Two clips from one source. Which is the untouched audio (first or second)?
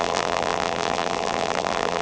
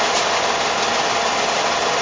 second